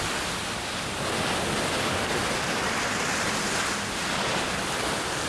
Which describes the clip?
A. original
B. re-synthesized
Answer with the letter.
A